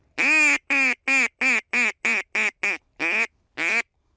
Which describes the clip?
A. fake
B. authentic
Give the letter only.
B